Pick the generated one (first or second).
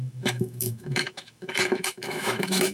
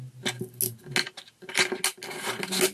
first